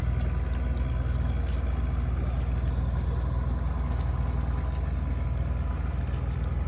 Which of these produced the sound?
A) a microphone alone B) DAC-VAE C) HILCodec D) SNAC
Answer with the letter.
A